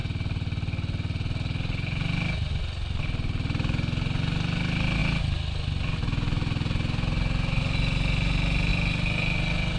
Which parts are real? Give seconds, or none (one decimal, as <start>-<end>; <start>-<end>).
0.0-9.8